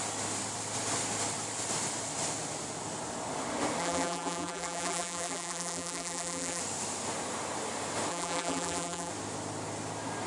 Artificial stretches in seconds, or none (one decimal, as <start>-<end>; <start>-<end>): 3.8-6.6; 8.1-9.1

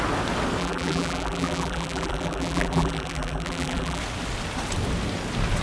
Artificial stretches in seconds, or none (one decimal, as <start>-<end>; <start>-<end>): 0.6-4.0

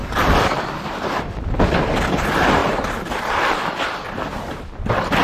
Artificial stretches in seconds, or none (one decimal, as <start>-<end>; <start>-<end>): 0.0-1.7; 2.6-3.2; 4.3-5.2

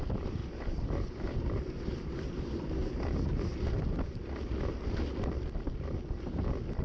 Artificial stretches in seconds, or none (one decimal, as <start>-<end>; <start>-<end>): 0.0-2.8; 6.2-6.8

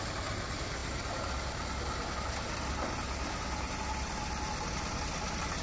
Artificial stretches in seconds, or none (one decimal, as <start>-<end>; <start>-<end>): none